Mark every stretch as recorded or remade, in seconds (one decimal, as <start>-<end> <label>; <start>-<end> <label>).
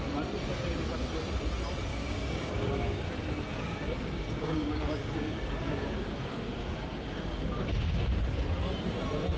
0.0-1.9 recorded; 1.9-3.1 remade; 3.1-3.5 recorded; 3.5-8.2 remade; 8.2-9.4 recorded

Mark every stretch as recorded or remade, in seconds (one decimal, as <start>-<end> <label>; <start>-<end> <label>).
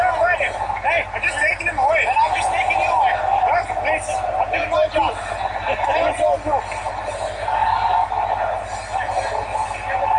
0.0-7.4 recorded; 7.4-8.1 remade; 8.1-10.2 recorded